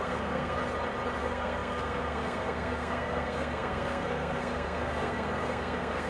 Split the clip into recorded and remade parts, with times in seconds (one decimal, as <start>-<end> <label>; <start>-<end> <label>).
0.0-0.6 remade; 0.6-1.2 recorded; 1.2-6.1 remade